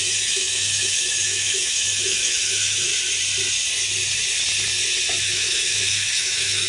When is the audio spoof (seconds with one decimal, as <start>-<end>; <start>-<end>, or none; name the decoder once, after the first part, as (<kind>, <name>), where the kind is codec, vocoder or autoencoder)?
0.0-2.9 (autoencoder, DAC-VAE); 5.2-6.7